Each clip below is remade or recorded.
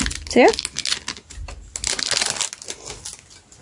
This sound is recorded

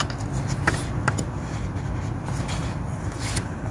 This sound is recorded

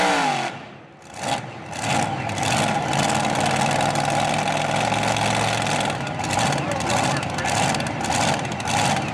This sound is recorded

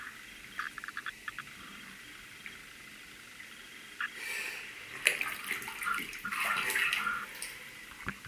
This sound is recorded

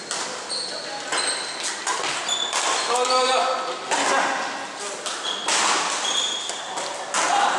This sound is recorded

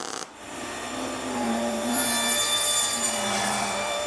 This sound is remade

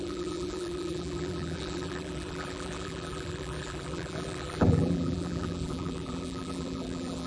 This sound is remade